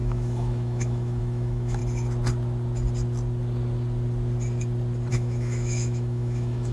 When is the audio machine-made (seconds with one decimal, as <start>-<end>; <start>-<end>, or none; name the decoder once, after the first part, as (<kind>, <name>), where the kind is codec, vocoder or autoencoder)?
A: 0.0-1.8 (autoencoder, DAC-VAE); 5.1-6.7